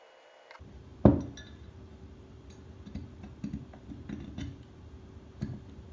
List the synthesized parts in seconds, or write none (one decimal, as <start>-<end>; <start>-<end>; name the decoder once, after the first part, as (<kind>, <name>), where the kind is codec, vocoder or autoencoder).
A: none

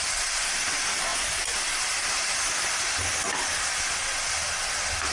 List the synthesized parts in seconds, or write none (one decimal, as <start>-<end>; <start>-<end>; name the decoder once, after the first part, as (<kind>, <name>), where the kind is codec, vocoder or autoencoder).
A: none